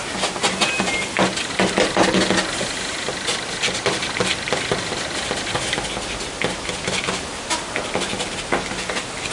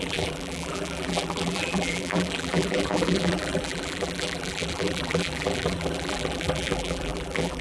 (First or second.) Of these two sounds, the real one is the first